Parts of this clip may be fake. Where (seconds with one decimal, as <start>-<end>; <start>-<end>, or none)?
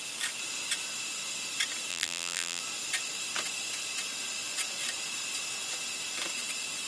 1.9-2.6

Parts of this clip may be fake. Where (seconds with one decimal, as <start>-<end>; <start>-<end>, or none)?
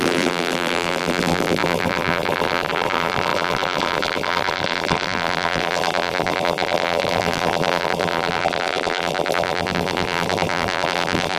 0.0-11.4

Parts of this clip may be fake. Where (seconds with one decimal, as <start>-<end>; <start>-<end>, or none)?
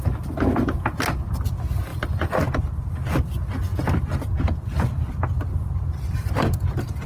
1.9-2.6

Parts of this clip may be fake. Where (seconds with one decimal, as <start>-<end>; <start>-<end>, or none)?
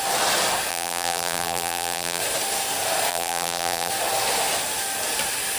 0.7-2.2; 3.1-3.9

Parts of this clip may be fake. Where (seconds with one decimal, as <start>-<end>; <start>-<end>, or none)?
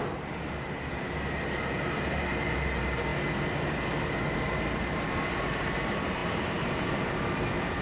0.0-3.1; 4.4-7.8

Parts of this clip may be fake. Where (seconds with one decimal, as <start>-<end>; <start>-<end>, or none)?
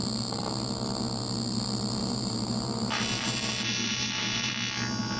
2.0-4.5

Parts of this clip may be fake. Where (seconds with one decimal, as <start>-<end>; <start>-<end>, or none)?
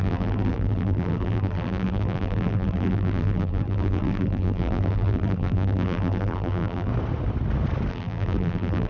0.0-6.9; 7.9-8.9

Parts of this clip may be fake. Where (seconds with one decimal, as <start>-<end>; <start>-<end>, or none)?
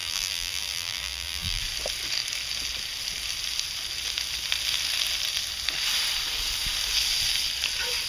0.0-1.6